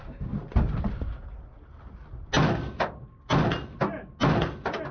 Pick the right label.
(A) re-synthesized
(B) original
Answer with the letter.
B